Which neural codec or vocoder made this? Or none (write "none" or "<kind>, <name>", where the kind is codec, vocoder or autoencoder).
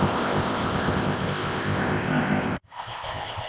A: codec, ZipCodec